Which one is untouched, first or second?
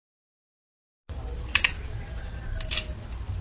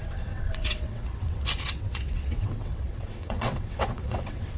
first